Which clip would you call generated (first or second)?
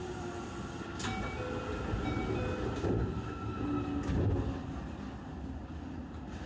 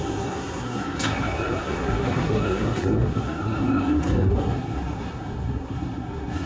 second